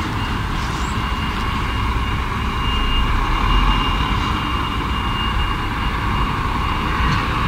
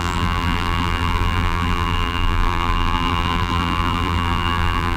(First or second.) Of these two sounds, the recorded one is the first